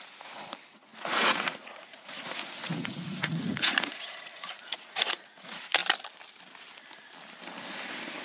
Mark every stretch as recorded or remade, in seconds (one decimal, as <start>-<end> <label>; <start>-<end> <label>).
0.0-5.8 remade; 5.8-8.2 recorded